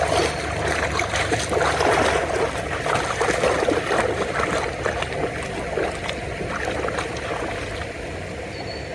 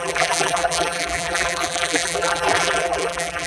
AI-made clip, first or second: second